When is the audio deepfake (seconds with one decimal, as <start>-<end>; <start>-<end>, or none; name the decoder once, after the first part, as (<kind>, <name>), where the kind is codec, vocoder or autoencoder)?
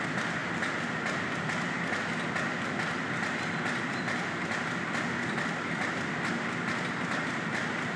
none